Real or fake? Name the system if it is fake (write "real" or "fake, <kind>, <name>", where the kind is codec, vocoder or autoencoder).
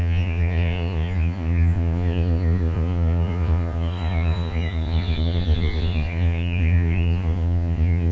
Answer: fake, vocoder, Vocos